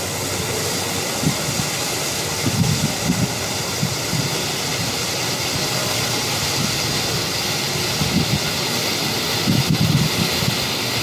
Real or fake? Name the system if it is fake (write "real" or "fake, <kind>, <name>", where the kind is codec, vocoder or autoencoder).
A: real